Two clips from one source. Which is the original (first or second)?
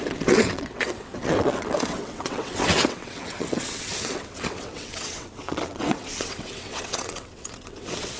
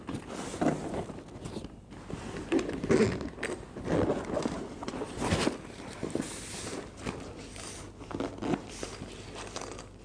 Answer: second